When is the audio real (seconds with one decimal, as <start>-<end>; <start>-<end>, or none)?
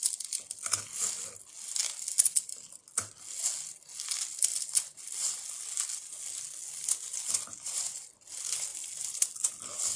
0.0-7.1; 8.1-8.7